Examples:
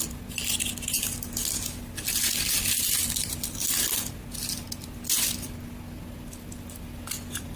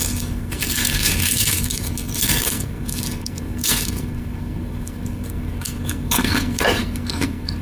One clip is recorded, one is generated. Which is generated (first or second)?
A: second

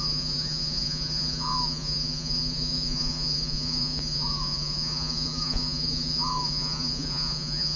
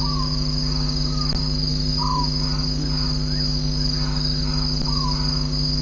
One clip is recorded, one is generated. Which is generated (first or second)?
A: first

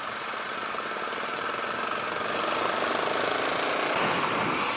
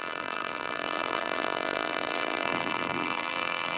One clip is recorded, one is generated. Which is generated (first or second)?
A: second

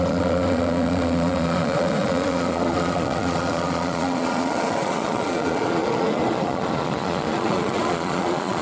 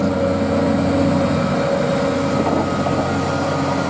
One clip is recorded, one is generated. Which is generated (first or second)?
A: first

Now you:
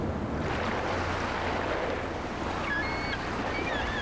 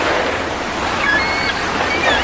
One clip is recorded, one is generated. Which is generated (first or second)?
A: second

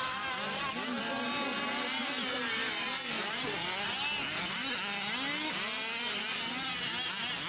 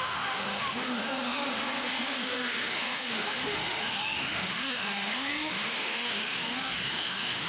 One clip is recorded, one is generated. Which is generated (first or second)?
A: second